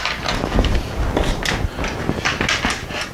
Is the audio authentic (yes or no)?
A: yes